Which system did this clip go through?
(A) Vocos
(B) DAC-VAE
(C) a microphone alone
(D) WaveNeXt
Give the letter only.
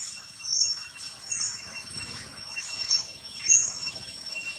B